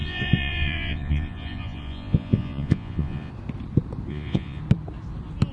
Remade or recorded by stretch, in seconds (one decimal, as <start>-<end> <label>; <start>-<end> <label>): 0.0-3.3 remade; 3.3-4.1 recorded; 4.1-4.6 remade; 4.6-5.5 recorded